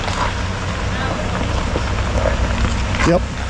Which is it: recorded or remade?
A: recorded